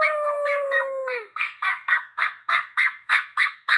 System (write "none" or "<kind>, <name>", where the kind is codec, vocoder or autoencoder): codec, SNAC